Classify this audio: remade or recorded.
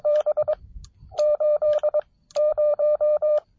remade